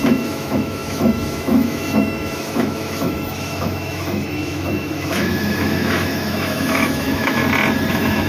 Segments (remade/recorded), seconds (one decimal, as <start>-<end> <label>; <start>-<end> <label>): 0.0-7.4 remade; 7.4-7.9 recorded; 7.9-8.3 remade